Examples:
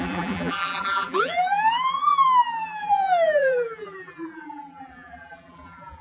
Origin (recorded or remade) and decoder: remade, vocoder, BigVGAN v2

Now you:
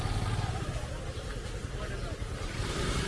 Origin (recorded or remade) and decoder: remade, vocoder, BigVGAN v2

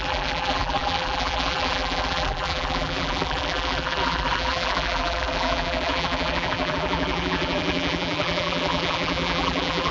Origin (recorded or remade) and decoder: remade, vocoder, BigVGAN v2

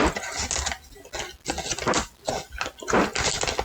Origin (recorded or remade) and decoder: recorded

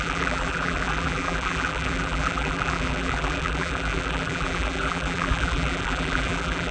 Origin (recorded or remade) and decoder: remade, vocoder, BigVGAN v2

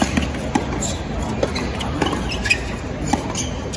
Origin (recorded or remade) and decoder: remade, vocoder, BigVGAN v2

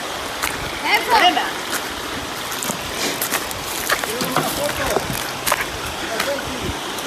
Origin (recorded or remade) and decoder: recorded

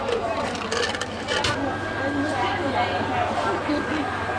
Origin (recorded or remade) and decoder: recorded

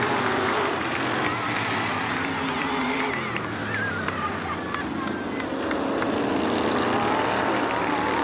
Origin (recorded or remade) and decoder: remade, vocoder, BigVGAN v2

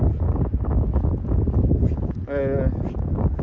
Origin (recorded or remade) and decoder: recorded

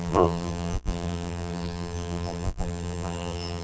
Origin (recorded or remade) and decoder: remade, vocoder, BigVGAN v2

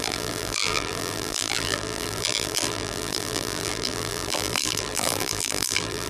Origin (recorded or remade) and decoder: remade, vocoder, BigVGAN v2